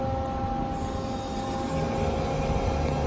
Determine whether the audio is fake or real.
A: real